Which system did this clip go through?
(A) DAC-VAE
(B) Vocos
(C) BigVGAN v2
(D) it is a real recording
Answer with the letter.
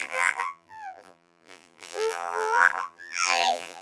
C